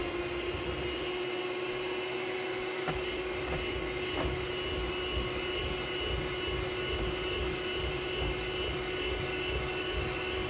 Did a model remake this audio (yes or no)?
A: no